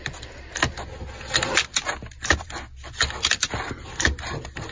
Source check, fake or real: real